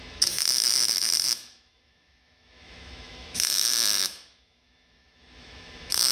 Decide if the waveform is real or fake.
fake